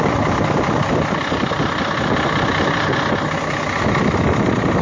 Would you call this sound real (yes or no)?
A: yes